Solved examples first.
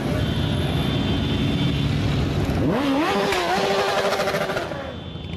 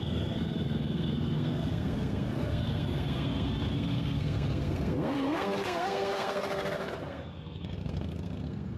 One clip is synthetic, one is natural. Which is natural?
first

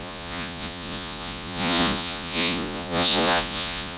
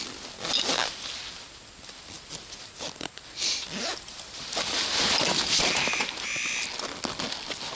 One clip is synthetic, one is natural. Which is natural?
second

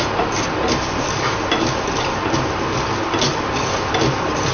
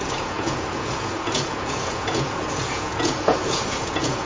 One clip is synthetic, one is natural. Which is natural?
first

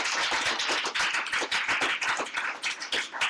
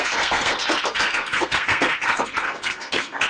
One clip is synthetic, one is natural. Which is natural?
first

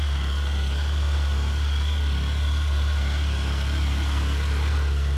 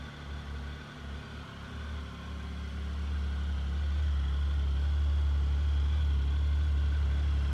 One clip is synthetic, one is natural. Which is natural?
second